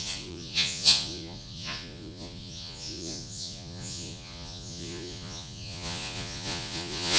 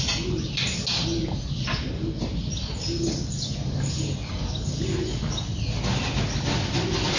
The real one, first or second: second